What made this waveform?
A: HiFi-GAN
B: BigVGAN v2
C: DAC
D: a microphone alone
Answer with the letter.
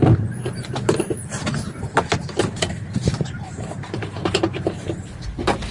B